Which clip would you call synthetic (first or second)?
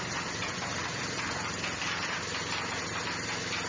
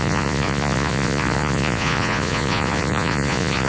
second